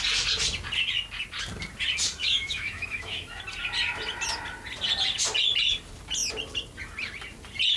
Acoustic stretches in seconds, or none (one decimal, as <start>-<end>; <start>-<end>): 0.0-2.2; 3.4-7.8